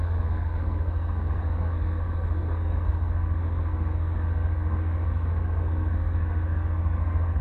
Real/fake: fake